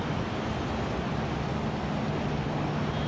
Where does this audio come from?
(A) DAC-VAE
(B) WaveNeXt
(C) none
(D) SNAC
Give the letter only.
C